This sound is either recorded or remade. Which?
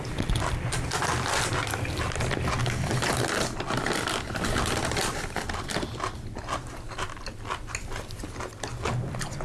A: recorded